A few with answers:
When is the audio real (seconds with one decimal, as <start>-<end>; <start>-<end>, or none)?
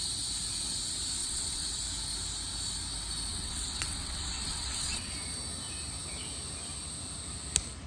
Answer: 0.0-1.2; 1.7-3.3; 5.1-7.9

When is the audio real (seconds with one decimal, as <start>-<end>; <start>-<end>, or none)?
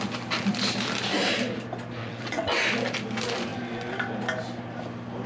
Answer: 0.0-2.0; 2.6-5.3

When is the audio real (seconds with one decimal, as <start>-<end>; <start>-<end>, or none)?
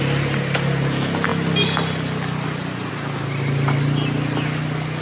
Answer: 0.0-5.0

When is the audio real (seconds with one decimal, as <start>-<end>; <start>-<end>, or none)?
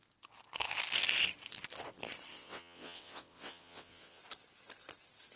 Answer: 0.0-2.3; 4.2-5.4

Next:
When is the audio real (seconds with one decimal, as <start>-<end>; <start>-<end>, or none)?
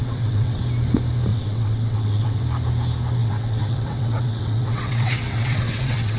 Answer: 0.6-1.3; 2.4-3.2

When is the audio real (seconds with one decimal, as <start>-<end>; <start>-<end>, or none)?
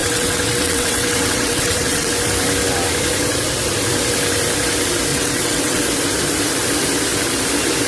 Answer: 2.1-5.1; 5.8-7.9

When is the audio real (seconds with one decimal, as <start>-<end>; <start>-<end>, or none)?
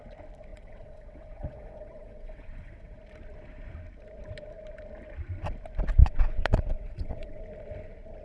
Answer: 0.0-0.5; 3.0-6.0; 7.4-8.2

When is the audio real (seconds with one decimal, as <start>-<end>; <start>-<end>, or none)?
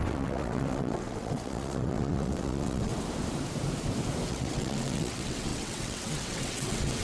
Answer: 2.9-4.3